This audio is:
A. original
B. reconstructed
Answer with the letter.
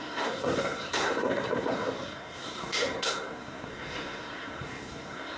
B